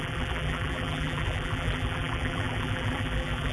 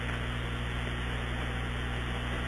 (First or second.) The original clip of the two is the second